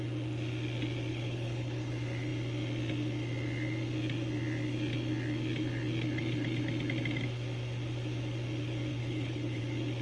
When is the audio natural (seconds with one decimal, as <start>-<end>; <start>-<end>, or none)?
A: 0.0-1.1; 1.9-8.9; 9.6-10.0